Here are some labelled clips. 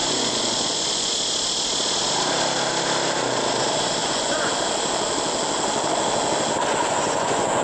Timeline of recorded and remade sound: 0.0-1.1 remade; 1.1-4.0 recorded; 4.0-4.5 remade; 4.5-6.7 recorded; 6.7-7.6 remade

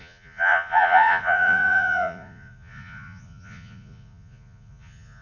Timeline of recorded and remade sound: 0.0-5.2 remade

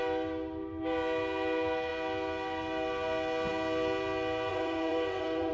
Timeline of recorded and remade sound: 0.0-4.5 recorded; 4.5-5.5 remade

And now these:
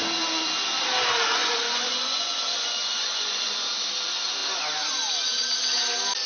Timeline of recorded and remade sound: 0.0-1.4 recorded; 1.4-3.7 remade; 3.7-6.3 recorded

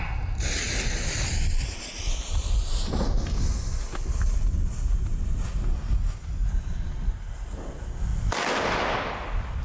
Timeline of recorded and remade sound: 0.0-9.6 recorded

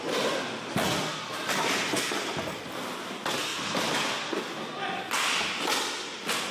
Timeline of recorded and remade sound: 0.0-6.5 recorded

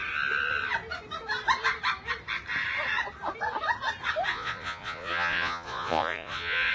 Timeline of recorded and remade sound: 0.0-4.3 recorded; 4.3-6.7 remade

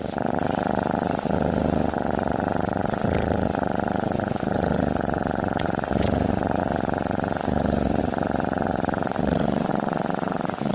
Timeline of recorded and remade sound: 0.0-10.7 remade